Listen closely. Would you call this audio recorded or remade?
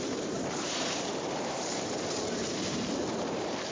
remade